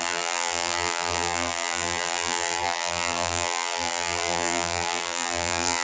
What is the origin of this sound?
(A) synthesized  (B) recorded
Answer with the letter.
A